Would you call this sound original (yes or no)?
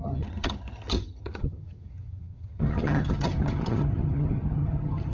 no